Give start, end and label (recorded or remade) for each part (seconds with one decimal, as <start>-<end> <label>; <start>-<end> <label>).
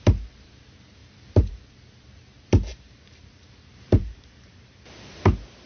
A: 0.0-1.0 recorded; 1.0-1.6 remade; 1.6-2.7 recorded; 2.7-4.5 remade; 4.5-5.7 recorded